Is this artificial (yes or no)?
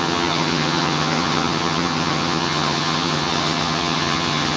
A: yes